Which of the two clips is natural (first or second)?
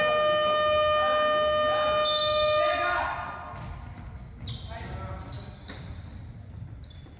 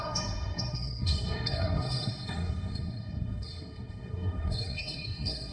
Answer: first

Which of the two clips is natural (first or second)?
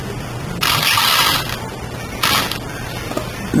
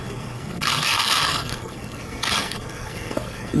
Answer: first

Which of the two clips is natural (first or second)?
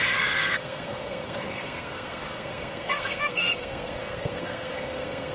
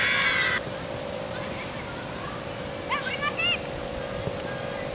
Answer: second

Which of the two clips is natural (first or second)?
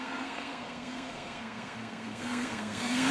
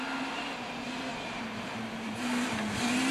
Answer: second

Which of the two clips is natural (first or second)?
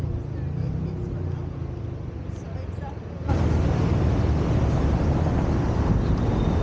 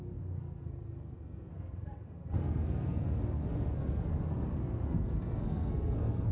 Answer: first